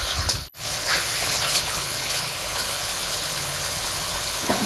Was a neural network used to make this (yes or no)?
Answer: yes